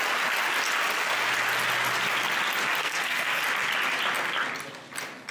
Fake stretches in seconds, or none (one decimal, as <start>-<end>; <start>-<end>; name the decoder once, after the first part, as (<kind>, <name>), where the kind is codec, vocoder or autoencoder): 2.8-3.4 (codec, SNAC)